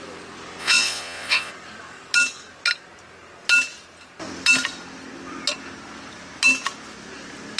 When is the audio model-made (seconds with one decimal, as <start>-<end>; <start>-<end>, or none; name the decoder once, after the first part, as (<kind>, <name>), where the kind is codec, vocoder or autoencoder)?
0.6-1.5 (vocoder, Vocos)